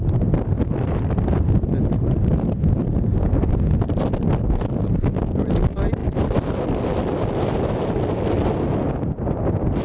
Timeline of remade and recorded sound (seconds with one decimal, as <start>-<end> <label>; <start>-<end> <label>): 0.0-9.8 recorded